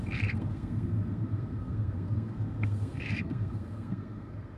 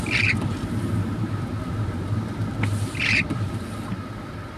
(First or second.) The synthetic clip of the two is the first